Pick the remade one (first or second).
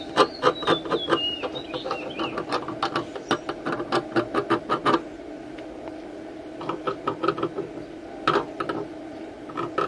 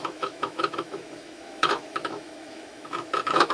second